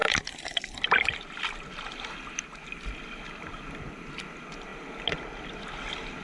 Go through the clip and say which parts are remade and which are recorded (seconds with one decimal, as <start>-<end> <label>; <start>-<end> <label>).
0.0-1.4 remade; 1.4-6.2 recorded